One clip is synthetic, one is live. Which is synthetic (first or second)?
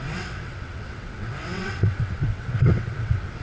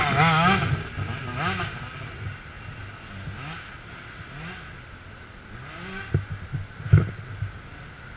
first